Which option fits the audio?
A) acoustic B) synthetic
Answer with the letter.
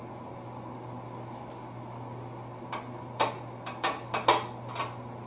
A